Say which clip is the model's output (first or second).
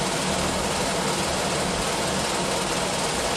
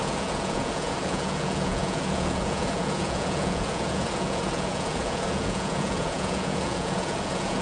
second